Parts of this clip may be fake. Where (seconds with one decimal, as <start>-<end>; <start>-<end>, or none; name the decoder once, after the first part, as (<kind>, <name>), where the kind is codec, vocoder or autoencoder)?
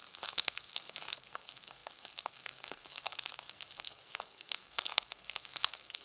0.0-6.0 (codec, SNAC)